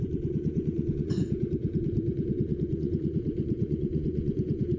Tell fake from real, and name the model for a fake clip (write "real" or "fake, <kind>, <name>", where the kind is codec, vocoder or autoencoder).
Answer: fake, vocoder, Vocos